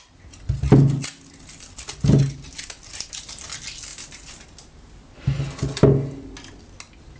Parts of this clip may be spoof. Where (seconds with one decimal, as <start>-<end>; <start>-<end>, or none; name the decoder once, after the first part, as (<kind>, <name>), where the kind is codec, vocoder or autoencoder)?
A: none